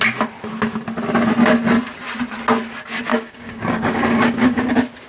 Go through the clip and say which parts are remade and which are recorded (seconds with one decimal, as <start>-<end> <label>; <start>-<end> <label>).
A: 0.0-3.1 recorded; 3.1-4.6 remade; 4.6-5.1 recorded